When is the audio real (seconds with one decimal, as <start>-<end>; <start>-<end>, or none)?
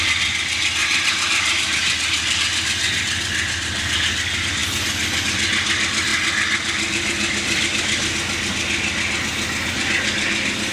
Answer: 0.0-0.8; 2.5-10.7